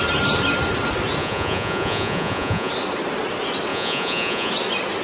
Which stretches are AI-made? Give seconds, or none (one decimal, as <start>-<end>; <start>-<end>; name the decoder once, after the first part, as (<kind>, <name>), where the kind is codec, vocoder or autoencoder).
1.2-2.7 (vocoder, Vocos); 3.7-4.5